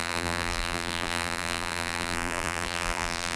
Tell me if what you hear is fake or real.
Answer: fake